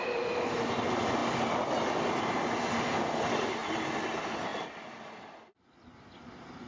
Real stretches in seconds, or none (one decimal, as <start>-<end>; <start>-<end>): 0.0-6.7